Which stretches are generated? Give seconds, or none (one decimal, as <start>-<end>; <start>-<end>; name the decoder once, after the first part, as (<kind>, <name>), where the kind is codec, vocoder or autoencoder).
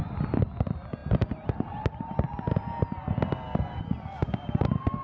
none